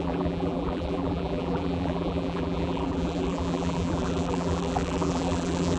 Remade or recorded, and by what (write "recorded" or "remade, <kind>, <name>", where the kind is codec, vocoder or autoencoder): remade, vocoder, BigVGAN v2